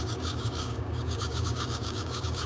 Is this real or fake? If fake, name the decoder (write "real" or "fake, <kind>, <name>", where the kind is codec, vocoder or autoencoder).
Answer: fake, codec, DAC